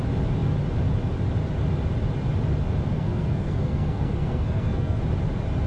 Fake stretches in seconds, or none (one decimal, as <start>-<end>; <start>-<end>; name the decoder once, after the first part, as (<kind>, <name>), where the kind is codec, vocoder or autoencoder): 2.9-5.0 (codec, SNAC)